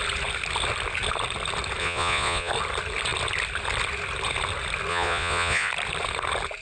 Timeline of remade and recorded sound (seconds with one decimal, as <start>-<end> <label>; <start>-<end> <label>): 0.0-1.8 recorded; 1.8-2.5 remade; 2.5-4.9 recorded; 4.9-5.7 remade; 5.7-6.6 recorded